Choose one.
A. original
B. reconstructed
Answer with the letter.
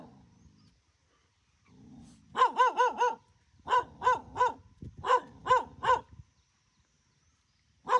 A